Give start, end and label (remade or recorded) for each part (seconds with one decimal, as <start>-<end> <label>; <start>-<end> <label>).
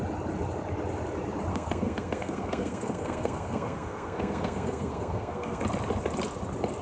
0.0-1.5 recorded; 1.5-5.6 remade; 5.6-6.8 recorded